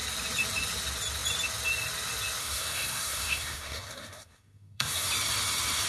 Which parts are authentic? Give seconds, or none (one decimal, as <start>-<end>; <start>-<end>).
0.0-2.4; 5.1-5.9

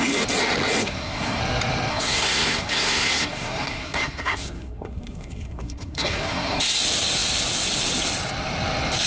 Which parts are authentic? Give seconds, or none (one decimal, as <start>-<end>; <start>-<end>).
0.0-0.8; 1.4-1.9; 6.8-9.1

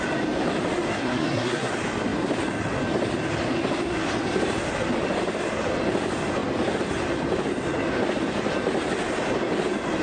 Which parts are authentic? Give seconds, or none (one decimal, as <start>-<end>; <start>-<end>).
0.0-0.9; 1.7-10.0

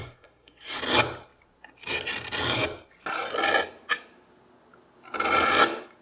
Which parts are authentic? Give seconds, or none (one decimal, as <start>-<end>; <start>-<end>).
0.8-6.0

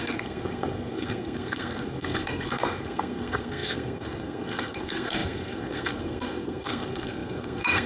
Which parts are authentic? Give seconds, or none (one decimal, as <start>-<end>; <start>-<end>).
none

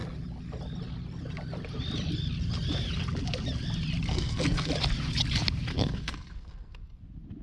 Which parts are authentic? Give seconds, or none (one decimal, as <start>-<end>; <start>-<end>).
0.0-4.1; 4.7-5.7; 7.0-7.4

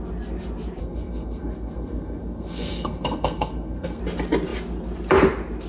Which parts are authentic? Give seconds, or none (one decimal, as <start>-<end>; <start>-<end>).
0.0-0.8; 4.0-5.7

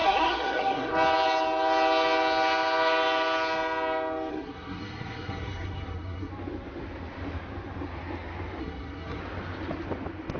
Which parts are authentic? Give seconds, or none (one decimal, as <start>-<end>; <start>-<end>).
0.9-4.3; 6.3-8.6; 9.2-10.4